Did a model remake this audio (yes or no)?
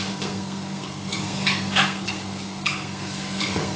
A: yes